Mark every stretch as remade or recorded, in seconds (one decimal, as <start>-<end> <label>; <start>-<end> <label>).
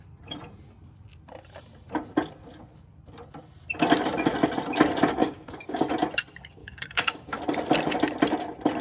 0.0-5.2 recorded; 5.2-5.8 remade; 5.8-6.6 recorded; 6.6-7.4 remade; 7.4-8.8 recorded